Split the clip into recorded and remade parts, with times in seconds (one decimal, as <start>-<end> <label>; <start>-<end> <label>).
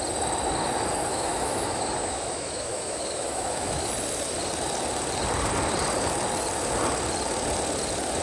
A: 0.0-1.1 recorded; 1.1-3.9 remade; 3.9-8.2 recorded